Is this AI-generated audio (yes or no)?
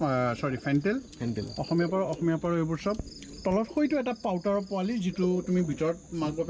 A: no